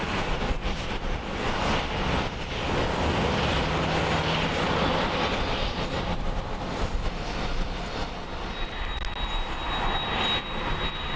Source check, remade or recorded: recorded